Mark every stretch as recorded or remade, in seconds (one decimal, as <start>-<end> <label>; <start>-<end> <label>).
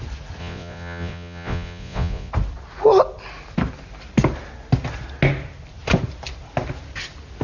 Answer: 0.0-0.4 recorded; 0.4-2.3 remade; 2.3-7.4 recorded